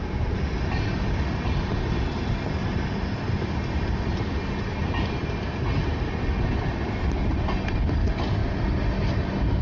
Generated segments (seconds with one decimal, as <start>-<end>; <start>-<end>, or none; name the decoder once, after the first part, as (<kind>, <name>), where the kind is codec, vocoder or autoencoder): none